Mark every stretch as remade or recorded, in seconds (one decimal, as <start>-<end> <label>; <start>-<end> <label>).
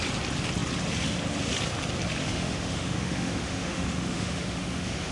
0.0-2.2 recorded; 2.2-5.1 remade